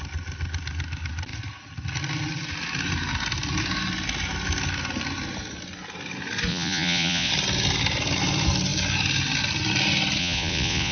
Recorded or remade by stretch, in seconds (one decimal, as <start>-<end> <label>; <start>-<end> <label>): 0.0-6.5 recorded; 6.5-7.3 remade; 7.3-10.2 recorded; 10.2-10.9 remade